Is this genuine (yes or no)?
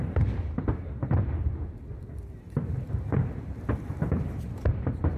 no